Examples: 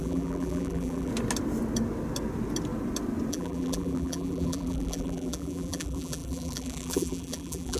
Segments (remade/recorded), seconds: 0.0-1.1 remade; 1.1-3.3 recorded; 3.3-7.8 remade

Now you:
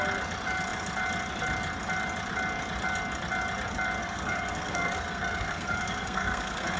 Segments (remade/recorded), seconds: 0.0-4.0 recorded; 4.0-6.8 remade

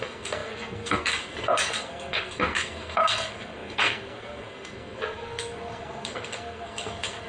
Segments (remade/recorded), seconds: 0.0-7.3 remade